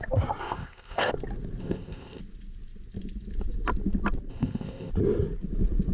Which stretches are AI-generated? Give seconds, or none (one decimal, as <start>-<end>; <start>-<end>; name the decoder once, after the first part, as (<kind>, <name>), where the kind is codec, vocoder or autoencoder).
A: 0.4-1.1 (codec, ZipCodec); 1.6-2.2; 4.3-4.9